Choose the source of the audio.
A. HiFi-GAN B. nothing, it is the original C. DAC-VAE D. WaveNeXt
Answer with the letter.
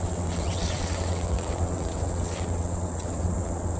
D